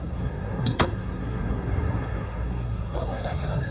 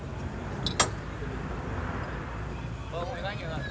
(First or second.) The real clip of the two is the second